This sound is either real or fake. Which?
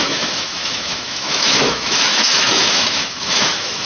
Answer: fake